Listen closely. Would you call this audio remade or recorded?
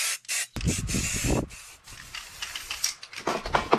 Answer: recorded